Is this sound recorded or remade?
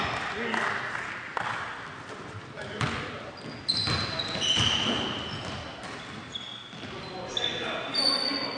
recorded